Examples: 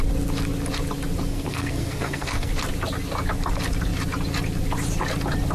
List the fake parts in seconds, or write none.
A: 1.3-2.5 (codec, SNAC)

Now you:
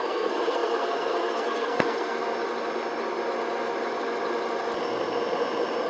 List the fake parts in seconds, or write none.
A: 0.0-2.2 (codec, SNAC)